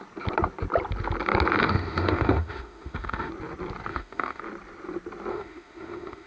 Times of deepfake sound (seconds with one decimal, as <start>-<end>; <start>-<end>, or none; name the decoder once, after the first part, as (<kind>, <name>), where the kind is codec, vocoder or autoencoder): 1.6-3.3 (autoencoder, DAC-VAE); 3.9-4.4; 5.3-6.3